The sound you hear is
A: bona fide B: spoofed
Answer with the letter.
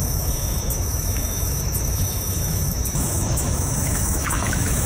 B